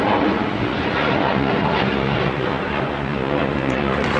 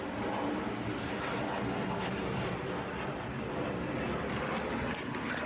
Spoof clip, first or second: first